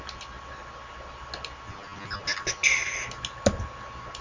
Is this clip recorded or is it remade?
recorded